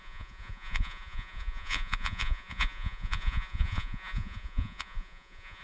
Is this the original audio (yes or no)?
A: no